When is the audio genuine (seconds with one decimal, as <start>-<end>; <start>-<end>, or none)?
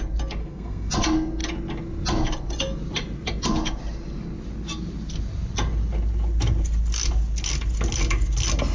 0.0-0.4; 0.9-8.7